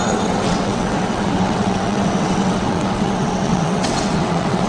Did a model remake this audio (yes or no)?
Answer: yes